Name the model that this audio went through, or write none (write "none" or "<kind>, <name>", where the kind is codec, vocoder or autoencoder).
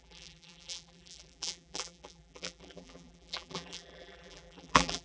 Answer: vocoder, BigVGAN v2